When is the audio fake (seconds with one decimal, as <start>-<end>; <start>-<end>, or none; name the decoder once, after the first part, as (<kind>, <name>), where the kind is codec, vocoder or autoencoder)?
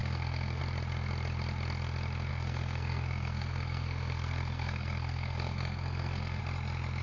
0.0-0.6 (codec, SNAC); 2.3-6.4